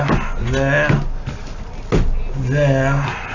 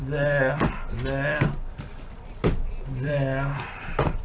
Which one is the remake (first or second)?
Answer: second